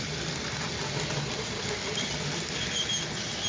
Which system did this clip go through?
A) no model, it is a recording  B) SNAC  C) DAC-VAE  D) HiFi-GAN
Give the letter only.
A